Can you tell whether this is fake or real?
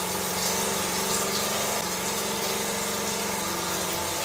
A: real